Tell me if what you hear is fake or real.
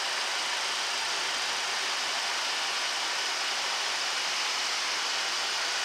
real